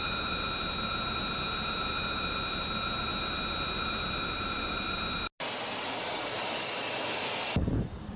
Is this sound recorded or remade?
recorded